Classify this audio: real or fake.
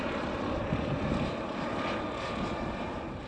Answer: real